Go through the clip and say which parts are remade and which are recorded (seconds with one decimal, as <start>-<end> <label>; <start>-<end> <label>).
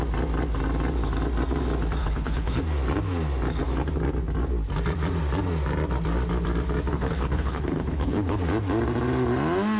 0.0-2.0 recorded; 2.0-2.6 remade; 2.6-6.9 recorded; 6.9-8.4 remade; 8.4-9.8 recorded